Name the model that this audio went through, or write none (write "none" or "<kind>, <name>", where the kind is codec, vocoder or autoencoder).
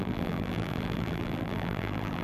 vocoder, BigVGAN v2